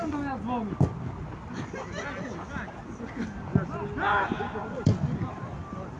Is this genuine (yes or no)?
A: yes